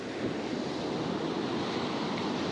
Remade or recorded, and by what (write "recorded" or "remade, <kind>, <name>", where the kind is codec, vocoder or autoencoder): recorded